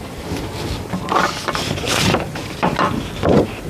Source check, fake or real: real